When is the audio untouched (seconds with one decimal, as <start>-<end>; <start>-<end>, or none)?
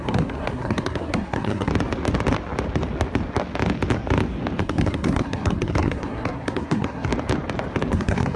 1.7-4.6; 7.1-7.9